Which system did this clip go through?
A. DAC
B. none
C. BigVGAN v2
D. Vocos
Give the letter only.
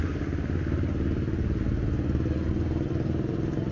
B